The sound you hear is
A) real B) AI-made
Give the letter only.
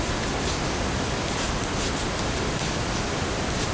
A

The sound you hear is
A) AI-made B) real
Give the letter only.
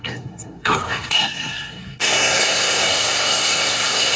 A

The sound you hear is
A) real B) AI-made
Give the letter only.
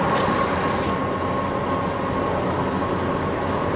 A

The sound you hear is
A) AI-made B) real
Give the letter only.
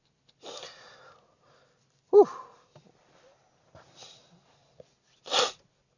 B